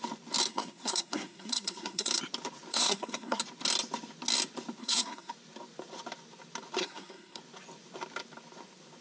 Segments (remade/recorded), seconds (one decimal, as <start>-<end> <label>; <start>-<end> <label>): 0.0-0.5 recorded; 0.5-2.2 remade; 2.2-2.7 recorded; 2.7-3.4 remade; 3.4-4.8 recorded; 4.8-5.3 remade; 5.3-6.8 recorded; 6.8-7.4 remade; 7.4-9.0 recorded